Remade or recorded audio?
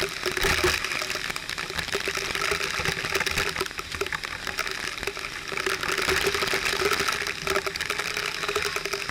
recorded